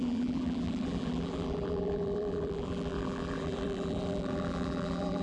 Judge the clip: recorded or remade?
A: remade